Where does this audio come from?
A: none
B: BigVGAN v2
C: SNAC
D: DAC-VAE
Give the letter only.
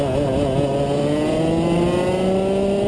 A